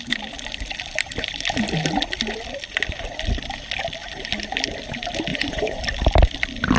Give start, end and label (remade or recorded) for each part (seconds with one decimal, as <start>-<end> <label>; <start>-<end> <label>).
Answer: 0.0-5.3 recorded; 5.3-5.8 remade; 5.8-6.8 recorded